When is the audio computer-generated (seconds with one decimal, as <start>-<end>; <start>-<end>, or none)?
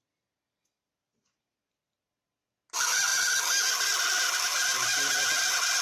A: none